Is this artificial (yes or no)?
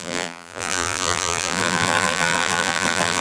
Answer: yes